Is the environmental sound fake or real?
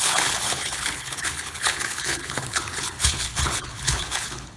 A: fake